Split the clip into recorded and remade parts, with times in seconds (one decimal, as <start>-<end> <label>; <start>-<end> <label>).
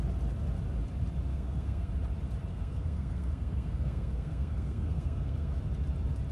0.0-1.3 recorded; 1.3-1.9 remade; 1.9-2.5 recorded; 2.5-5.6 remade; 5.6-6.3 recorded